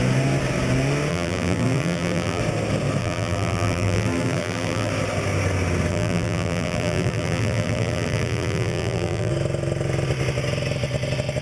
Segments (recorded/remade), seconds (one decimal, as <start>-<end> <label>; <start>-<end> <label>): 0.0-1.1 recorded; 1.1-2.4 remade; 2.4-3.0 recorded; 3.0-4.9 remade; 4.9-5.9 recorded; 5.9-9.3 remade; 9.3-11.4 recorded